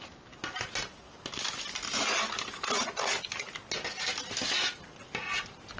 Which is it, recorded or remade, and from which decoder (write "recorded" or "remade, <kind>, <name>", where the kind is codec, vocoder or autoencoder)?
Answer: recorded